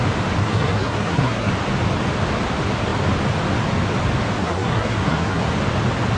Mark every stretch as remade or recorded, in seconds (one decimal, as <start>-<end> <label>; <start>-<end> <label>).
0.0-0.4 recorded; 0.4-1.5 remade; 1.5-4.4 recorded; 4.4-5.4 remade; 5.4-6.2 recorded